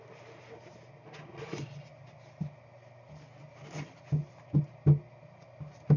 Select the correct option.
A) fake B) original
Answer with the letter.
B